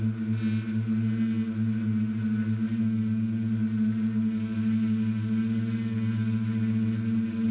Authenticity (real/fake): real